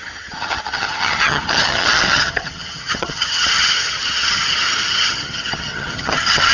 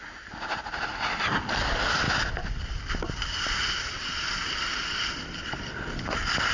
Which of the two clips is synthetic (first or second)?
first